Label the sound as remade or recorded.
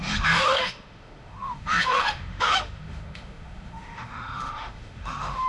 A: remade